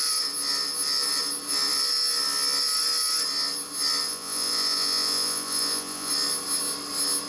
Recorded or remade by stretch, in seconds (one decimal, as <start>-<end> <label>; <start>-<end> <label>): 0.0-4.1 recorded; 4.1-6.1 remade; 6.1-7.3 recorded